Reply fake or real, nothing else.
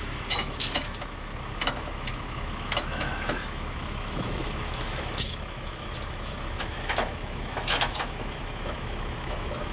fake